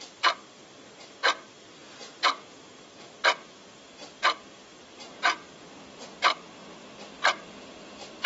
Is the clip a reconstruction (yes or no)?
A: no